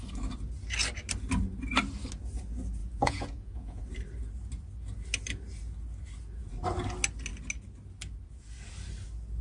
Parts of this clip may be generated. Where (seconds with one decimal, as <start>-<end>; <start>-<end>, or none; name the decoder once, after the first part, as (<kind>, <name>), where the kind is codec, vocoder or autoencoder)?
2.8-3.8 (vocoder, Vocos)